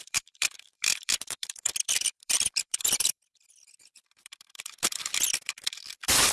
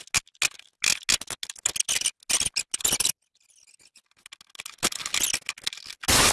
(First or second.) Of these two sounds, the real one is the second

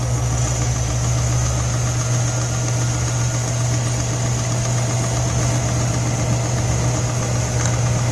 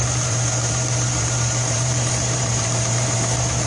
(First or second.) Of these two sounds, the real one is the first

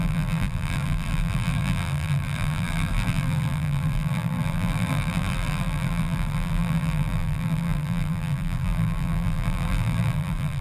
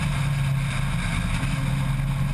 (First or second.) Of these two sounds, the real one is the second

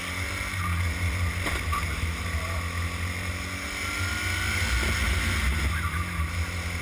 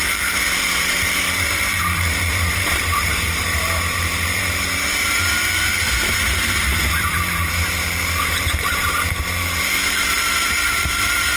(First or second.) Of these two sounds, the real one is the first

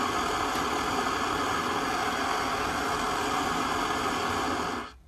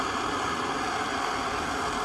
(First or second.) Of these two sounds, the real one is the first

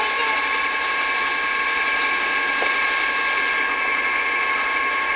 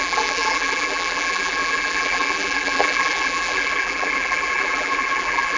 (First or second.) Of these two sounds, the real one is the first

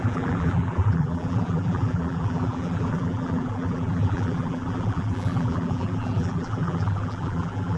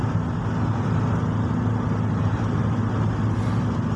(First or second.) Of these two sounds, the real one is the second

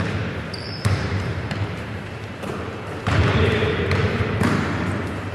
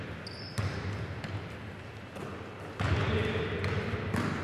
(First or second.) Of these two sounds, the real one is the second